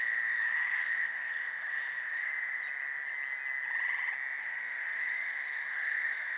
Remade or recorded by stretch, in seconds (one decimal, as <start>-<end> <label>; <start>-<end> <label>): 0.0-2.3 remade; 2.3-4.4 recorded; 4.4-6.4 remade